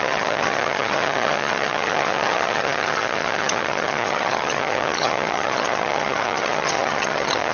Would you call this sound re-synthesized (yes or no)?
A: yes